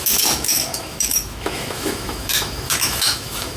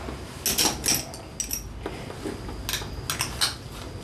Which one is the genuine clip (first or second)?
second